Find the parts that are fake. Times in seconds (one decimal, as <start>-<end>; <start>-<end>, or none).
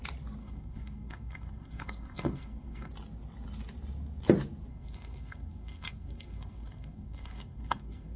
0.4-2.9; 4.7-8.2